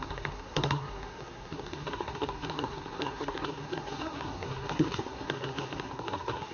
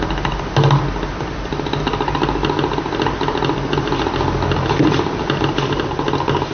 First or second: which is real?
second